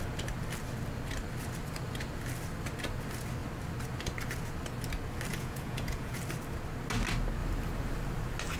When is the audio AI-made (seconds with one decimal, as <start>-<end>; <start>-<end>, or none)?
5.3-6.2